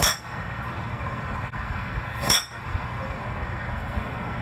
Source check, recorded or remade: remade